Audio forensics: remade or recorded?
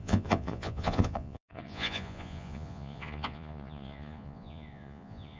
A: remade